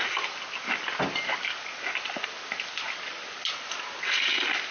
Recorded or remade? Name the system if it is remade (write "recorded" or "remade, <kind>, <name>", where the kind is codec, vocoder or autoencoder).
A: recorded